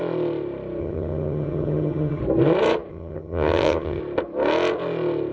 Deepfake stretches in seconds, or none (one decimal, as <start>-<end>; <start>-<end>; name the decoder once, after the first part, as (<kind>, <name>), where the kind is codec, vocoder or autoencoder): 0.8-2.2 (vocoder, HiFi-GAN); 2.9-4.0